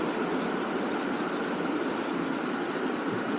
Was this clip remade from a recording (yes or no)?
no